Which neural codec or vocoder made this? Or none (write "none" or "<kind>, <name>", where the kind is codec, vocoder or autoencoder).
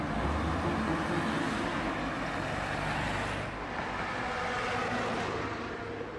none